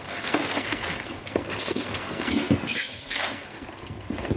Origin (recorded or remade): remade